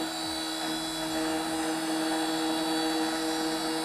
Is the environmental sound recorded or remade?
recorded